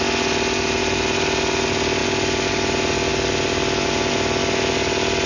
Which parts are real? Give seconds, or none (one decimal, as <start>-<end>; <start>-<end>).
0.0-5.3